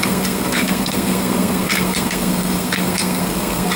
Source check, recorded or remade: remade